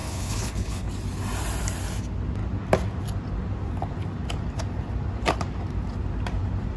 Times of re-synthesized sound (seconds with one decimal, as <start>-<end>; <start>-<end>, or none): 0.0-0.9